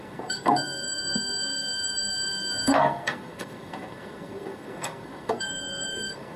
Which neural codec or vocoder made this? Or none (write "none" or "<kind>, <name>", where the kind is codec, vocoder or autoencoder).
codec, SNAC